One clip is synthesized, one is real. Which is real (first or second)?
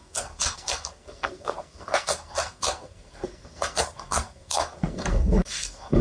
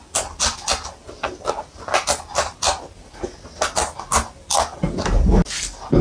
second